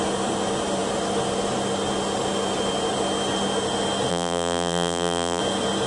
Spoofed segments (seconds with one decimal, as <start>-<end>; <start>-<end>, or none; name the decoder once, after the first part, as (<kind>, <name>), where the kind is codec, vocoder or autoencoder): 4.1-5.4 (vocoder, BigVGAN v2)